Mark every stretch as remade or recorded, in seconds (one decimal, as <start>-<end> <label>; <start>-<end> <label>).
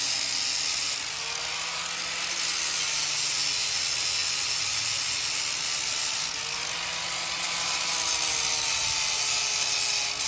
0.0-10.3 recorded